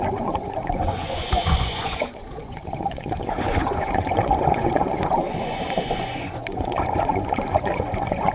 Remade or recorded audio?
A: remade